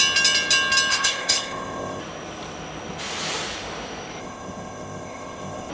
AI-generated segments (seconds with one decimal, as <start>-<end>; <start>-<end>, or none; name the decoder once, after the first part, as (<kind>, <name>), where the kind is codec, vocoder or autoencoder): 0.9-2.0 (codec, ZipCodec); 4.2-5.7